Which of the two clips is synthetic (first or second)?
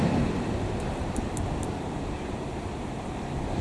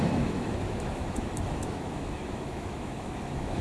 second